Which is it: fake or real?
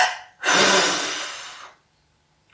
real